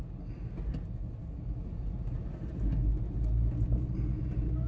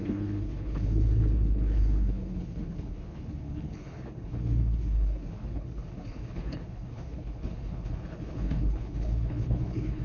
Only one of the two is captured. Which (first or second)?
first